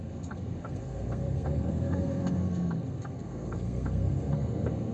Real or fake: fake